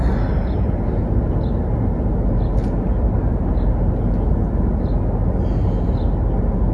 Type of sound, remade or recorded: recorded